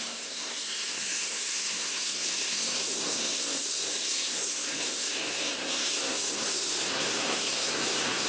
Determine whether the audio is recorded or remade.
remade